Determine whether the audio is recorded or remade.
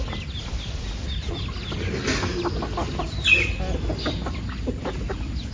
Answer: recorded